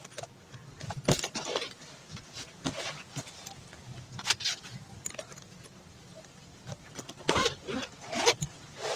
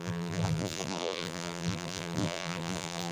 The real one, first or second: first